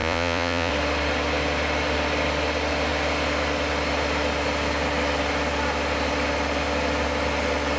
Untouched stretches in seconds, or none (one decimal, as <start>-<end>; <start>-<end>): 0.7-7.8

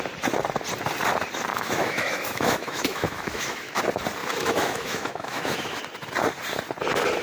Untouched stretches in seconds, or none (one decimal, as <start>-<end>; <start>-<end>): 0.0-1.5; 3.8-4.2; 5.8-7.2

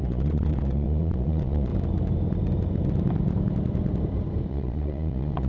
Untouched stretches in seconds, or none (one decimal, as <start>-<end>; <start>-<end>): 1.7-4.5

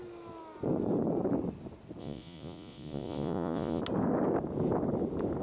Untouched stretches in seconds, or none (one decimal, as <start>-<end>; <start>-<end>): 0.0-2.0; 3.8-5.4

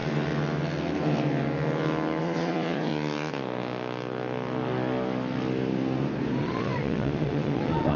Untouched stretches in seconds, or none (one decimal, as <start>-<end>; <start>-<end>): 0.0-2.2; 2.9-6.4